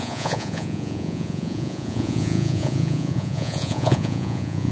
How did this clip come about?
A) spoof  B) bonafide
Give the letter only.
A